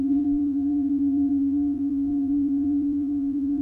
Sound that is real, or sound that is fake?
fake